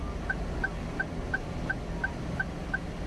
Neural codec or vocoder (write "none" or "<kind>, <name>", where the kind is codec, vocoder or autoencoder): none